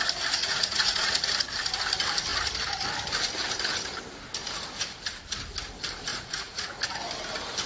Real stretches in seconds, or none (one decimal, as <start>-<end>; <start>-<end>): 0.0-0.4; 1.3-6.1; 6.8-7.7